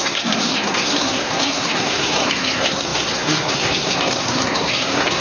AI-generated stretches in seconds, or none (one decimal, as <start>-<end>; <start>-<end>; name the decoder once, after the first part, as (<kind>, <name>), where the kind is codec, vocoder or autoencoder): 0.0-5.2 (codec, SNAC)